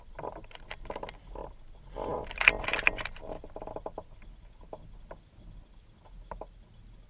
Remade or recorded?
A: recorded